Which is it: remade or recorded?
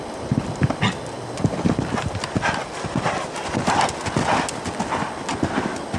recorded